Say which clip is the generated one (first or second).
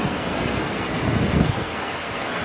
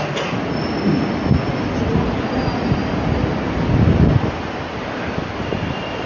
first